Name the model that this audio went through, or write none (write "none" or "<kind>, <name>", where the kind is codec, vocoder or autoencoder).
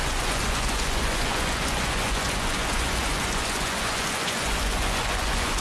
vocoder, Vocos